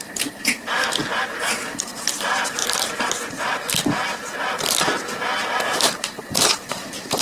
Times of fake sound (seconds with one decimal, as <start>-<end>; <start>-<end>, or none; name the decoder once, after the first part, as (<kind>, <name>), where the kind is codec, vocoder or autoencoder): 0.0-1.0 (vocoder, BigVGAN v2); 2.2-2.6; 6.7-7.2